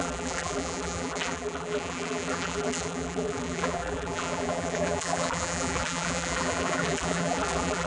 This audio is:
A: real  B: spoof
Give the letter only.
B